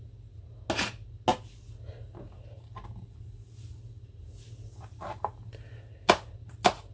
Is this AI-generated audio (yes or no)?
no